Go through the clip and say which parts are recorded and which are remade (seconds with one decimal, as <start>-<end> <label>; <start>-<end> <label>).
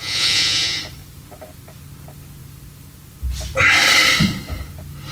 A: 0.0-0.8 remade; 0.8-5.1 recorded